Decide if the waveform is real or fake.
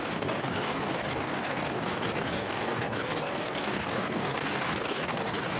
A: fake